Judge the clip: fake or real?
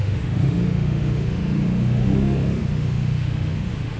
fake